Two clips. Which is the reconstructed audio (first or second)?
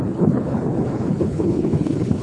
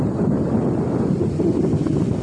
first